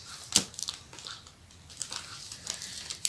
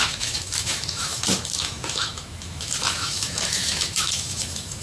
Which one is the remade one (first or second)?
second